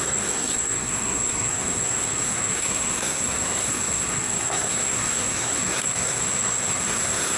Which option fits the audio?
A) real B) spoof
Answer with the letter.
B